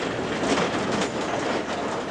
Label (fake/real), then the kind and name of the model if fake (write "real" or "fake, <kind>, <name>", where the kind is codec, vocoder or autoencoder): real